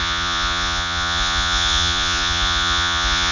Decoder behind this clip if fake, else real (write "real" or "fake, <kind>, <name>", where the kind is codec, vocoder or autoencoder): fake, vocoder, Vocos